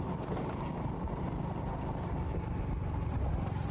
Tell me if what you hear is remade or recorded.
recorded